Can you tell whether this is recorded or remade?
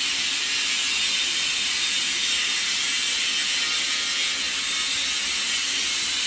recorded